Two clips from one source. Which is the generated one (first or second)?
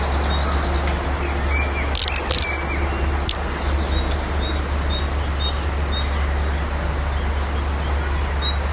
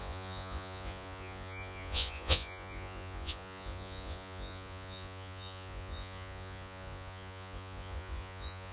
second